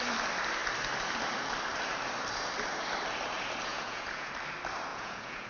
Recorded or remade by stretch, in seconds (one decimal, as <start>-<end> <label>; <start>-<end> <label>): 0.0-3.7 recorded; 3.7-4.3 remade; 4.3-4.9 recorded; 4.9-5.5 remade